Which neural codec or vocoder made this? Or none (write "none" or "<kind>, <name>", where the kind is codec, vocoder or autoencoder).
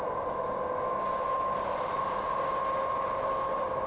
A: none